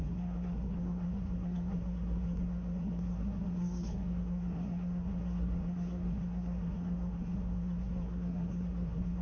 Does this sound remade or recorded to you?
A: remade